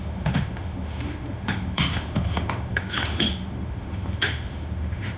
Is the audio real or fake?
fake